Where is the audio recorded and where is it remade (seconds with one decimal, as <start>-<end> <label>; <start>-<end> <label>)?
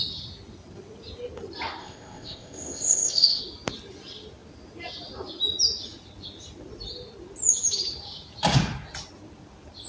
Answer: 0.0-1.8 recorded; 1.8-3.4 remade; 3.4-9.9 recorded